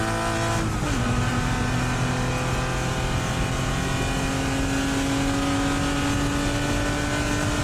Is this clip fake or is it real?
real